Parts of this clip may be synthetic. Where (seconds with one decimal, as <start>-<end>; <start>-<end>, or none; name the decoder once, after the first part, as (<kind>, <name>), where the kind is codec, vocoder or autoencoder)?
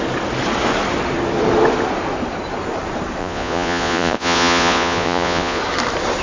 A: 3.2-5.6 (vocoder, Vocos)